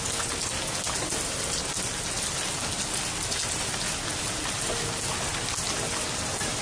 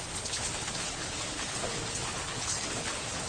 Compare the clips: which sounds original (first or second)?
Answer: first